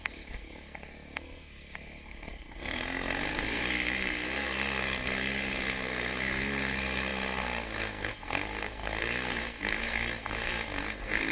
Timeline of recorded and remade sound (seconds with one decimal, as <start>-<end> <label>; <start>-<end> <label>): 0.0-11.3 remade